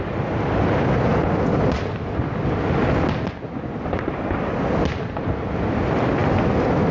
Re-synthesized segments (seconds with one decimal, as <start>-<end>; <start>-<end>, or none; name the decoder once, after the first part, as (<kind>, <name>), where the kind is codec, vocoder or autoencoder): none